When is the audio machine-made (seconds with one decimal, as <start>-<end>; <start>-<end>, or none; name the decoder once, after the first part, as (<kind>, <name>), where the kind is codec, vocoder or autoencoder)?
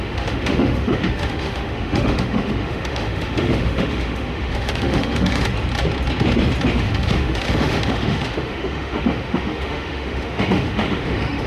0.0-5.5 (autoencoder, DAC-VAE); 6.7-11.5